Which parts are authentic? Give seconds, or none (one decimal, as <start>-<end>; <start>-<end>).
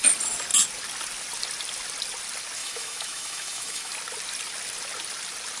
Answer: 0.0-2.6; 3.9-5.6